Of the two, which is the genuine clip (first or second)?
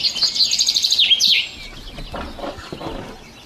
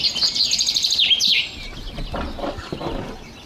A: first